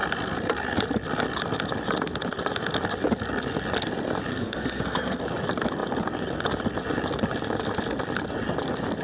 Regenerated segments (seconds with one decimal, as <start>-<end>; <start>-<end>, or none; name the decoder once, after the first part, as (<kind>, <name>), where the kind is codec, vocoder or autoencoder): 4.3-5.2 (codec, SNAC)